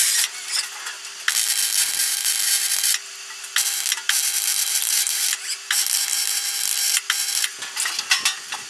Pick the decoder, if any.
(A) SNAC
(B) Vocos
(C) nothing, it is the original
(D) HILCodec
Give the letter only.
C